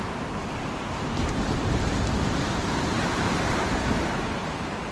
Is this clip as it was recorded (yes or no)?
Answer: no